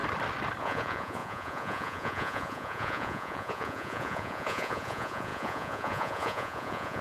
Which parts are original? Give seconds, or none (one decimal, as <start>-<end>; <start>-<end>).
0.0-0.6